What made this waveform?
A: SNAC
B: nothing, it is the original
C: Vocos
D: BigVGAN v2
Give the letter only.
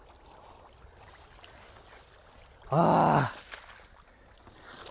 B